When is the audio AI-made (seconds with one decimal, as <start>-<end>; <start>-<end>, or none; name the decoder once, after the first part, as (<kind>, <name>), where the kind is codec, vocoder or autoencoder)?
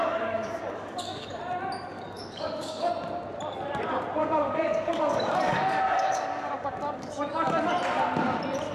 0.0-1.4 (codec, DAC); 1.9-2.9; 4.2-7.7